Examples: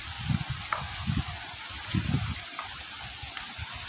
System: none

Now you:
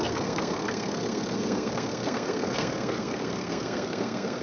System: codec, SNAC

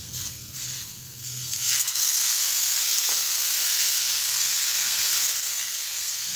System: codec, SNAC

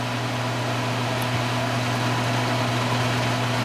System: none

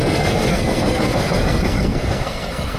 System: codec, SNAC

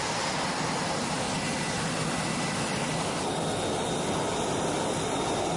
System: none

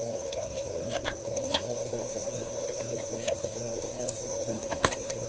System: codec, SNAC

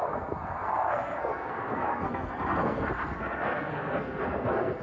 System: codec, SNAC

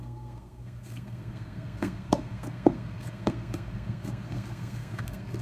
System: codec, SNAC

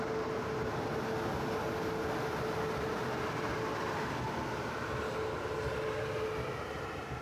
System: none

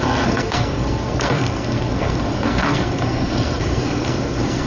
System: codec, SNAC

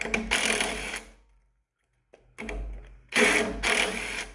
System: none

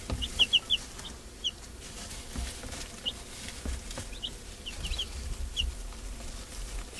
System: none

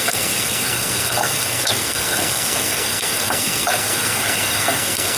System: codec, SNAC